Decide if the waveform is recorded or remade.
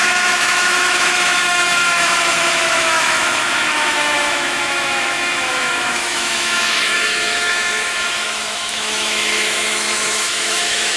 remade